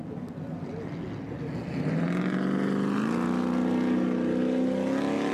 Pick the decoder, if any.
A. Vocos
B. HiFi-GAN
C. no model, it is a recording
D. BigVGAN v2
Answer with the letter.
C